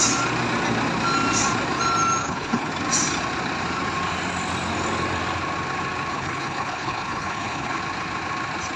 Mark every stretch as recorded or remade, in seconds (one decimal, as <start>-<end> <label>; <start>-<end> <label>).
0.0-2.2 recorded; 2.2-2.7 remade; 2.7-6.1 recorded; 6.1-7.8 remade; 7.8-8.8 recorded